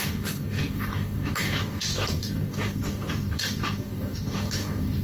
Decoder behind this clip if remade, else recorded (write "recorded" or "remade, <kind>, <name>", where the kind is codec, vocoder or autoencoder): remade, codec, DAC